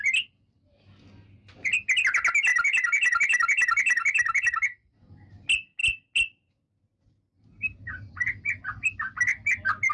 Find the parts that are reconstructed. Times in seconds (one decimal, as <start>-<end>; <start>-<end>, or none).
none

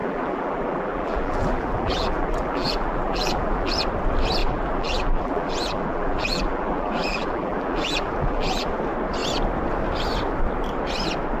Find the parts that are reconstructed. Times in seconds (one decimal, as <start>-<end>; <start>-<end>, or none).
0.0-3.7; 4.4-8.7

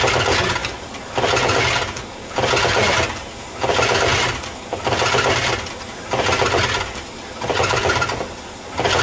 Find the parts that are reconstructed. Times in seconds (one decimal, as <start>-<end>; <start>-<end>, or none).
none

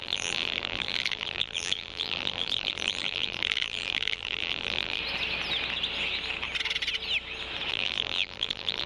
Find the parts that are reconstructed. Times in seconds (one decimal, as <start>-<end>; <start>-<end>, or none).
0.0-5.0; 7.7-8.9

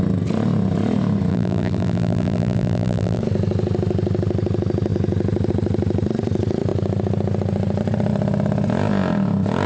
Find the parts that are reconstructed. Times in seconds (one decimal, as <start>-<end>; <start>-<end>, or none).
1.3-3.2